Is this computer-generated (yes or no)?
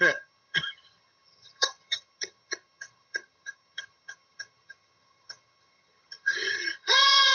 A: yes